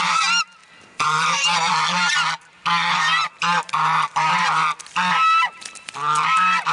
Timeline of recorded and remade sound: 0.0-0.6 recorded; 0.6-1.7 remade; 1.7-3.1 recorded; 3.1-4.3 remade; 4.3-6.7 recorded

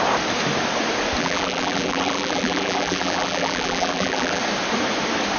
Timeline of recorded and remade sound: 0.0-1.2 recorded; 1.2-4.4 remade; 4.4-5.4 recorded

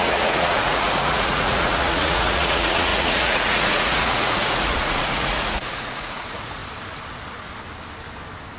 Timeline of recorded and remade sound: 0.0-6.6 remade; 6.6-8.6 recorded

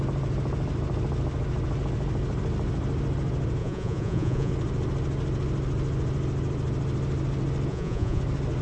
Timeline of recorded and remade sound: 0.0-3.6 recorded; 3.6-4.5 remade; 4.5-7.7 recorded; 7.7-8.2 remade; 8.2-8.6 recorded

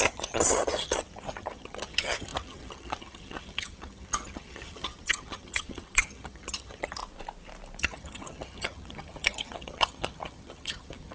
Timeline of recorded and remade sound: 0.0-7.0 remade; 7.0-7.8 recorded; 7.8-11.1 remade

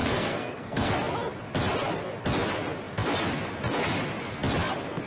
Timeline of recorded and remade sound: 0.0-0.9 remade; 0.9-5.1 recorded

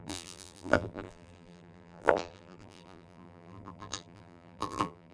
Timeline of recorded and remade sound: 0.0-5.1 remade

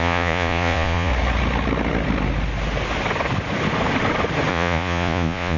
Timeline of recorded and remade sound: 0.0-1.1 remade; 1.1-4.5 recorded; 4.5-5.6 remade